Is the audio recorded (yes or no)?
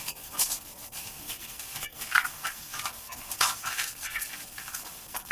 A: no